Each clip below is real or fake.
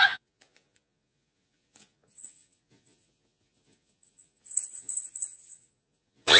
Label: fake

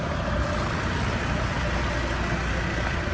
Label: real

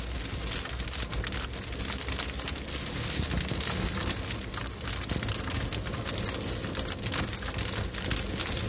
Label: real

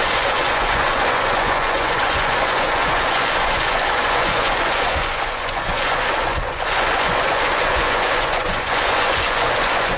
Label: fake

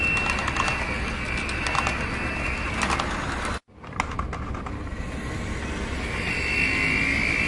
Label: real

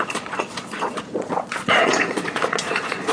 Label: fake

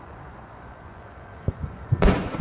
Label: fake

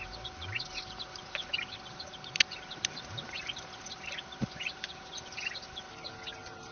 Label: real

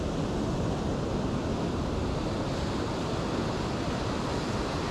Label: real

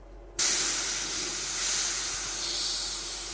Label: real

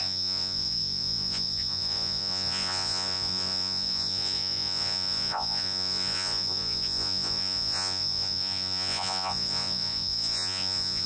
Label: fake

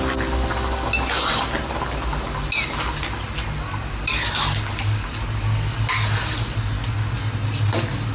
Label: real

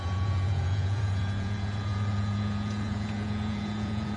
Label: fake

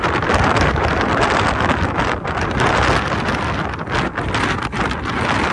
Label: real